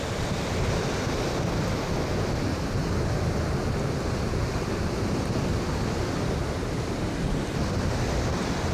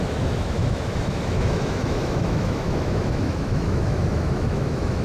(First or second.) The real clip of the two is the first